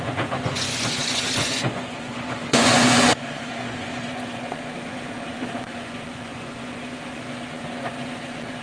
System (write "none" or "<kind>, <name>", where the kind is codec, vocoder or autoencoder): vocoder, Vocos